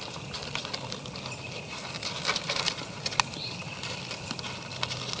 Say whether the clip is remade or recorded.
recorded